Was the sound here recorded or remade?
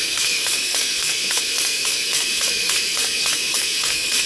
remade